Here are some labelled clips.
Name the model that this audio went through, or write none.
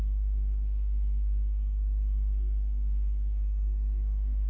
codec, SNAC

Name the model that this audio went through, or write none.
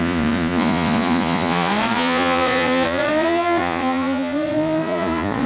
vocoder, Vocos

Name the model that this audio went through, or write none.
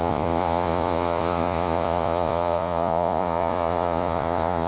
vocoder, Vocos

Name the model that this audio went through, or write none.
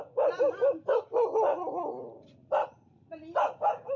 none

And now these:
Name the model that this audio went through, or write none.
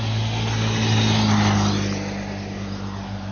none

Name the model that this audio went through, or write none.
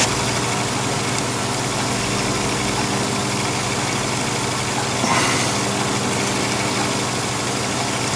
none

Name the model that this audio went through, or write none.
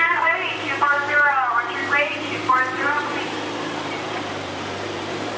vocoder, BigVGAN v2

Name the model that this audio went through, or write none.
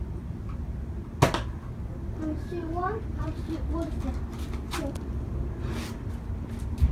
none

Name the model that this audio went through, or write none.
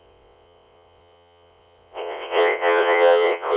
vocoder, WaveNeXt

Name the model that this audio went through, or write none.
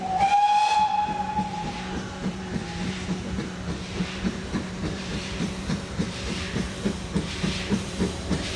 vocoder, BigVGAN v2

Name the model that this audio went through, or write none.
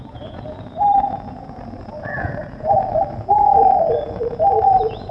vocoder, Vocos